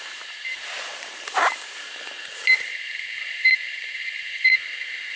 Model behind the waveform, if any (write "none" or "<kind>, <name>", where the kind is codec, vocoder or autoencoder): vocoder, BigVGAN v2